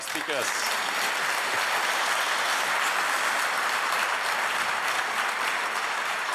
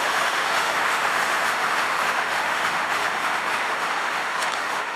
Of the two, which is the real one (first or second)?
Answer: first